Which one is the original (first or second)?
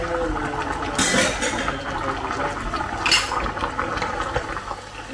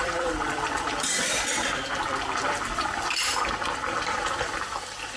first